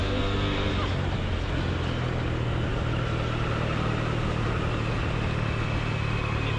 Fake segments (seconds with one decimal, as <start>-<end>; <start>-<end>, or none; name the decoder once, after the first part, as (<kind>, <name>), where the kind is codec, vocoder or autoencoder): 0.0-0.7 (codec, SNAC)